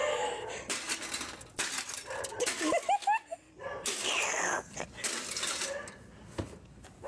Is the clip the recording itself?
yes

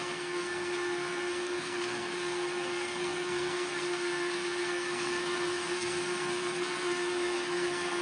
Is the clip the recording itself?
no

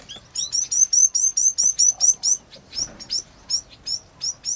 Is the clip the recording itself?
yes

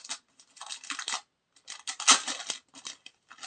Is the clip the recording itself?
yes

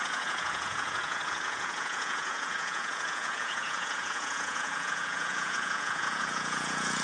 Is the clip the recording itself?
no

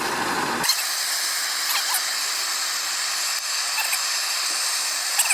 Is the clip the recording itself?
yes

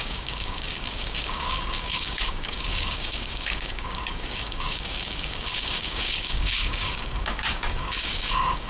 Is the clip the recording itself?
no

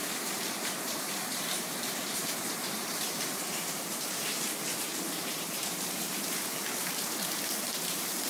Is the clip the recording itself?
no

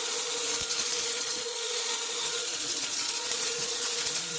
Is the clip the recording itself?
no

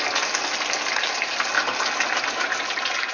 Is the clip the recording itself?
yes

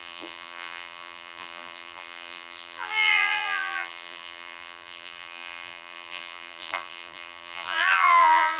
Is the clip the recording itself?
no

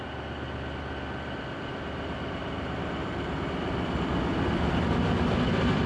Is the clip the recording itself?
yes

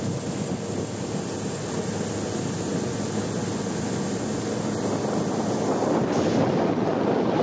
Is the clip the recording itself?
yes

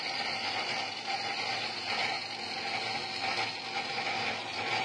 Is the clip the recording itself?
yes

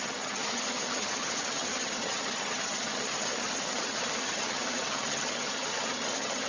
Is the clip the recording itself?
no